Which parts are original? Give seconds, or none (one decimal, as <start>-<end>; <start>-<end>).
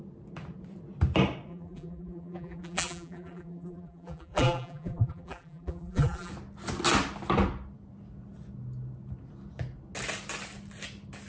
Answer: 0.0-1.5; 6.3-11.3